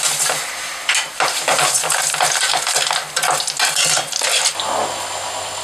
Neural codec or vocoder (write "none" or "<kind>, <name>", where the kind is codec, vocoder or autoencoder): none